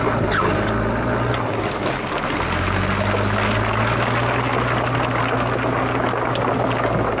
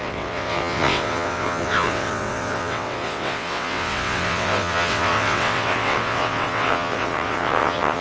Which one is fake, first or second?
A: second